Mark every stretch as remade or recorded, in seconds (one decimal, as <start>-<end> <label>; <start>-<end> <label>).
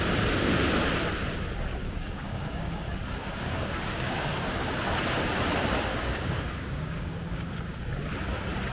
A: 0.0-1.8 recorded; 1.8-4.7 remade; 4.7-5.9 recorded; 5.9-7.8 remade; 7.8-8.7 recorded